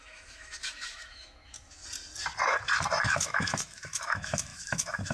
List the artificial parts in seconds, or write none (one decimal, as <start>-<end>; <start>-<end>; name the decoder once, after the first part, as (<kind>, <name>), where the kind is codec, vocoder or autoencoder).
0.0-1.8 (autoencoder, DAC-VAE); 3.0-5.1